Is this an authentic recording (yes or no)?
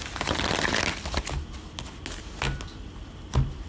yes